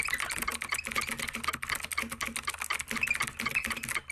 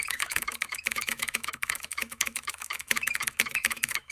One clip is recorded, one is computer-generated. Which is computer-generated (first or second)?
second